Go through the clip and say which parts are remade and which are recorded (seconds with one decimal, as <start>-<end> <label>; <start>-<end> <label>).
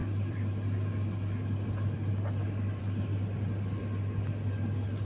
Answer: 0.0-2.8 remade; 2.8-5.0 recorded